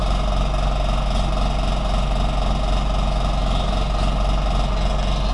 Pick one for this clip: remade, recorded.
recorded